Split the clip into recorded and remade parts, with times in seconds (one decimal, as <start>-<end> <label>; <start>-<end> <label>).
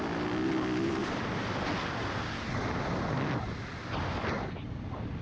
0.0-5.2 recorded